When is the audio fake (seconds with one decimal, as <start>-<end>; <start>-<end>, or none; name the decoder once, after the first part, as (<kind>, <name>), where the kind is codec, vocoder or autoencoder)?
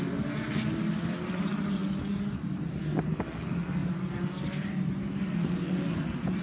3.8-5.3 (vocoder, BigVGAN v2)